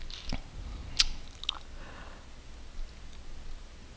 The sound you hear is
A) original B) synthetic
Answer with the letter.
A